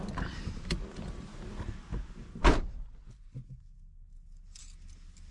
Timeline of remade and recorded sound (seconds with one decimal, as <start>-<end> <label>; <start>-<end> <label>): 0.0-5.3 recorded